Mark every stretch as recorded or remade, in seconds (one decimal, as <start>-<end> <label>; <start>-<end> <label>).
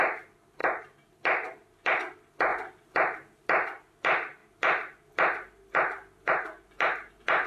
0.0-7.5 recorded